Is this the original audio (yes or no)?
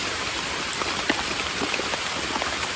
no